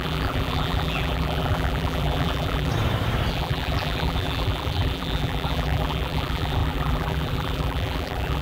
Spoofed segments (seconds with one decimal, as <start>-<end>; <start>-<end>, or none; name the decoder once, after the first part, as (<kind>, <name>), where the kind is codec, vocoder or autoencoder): 0.0-2.7 (vocoder, BigVGAN v2); 3.3-8.4